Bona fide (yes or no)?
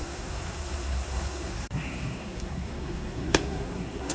no